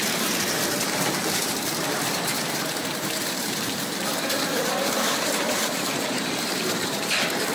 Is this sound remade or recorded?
remade